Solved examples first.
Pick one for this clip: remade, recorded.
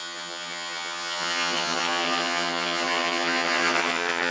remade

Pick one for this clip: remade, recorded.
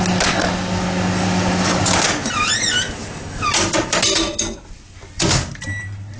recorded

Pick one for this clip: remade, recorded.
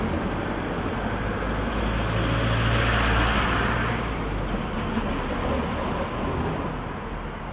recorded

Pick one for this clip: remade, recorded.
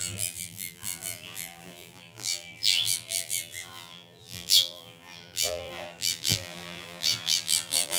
remade